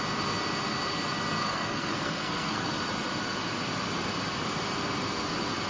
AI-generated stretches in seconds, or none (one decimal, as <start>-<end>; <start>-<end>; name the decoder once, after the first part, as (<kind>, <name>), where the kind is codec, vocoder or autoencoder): 1.4-2.7 (codec, SNAC)